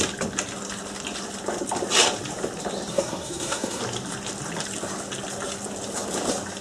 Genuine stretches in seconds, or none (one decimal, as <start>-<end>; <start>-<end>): 0.0-2.9; 3.8-6.6